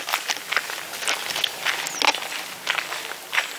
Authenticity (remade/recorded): recorded